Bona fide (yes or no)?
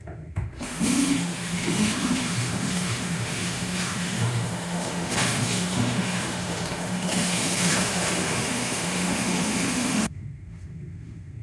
no